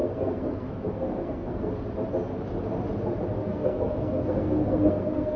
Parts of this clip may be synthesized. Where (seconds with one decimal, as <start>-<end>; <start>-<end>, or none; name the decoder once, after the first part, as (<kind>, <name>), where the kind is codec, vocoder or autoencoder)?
0.0-1.7 (codec, SNAC); 3.4-5.4